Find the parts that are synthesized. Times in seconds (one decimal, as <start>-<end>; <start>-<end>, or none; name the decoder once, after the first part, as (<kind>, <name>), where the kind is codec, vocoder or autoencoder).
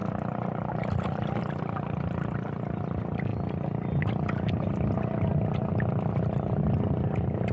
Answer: none